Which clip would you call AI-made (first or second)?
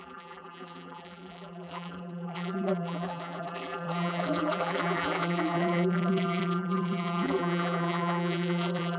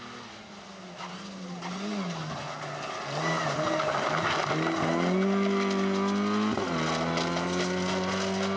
first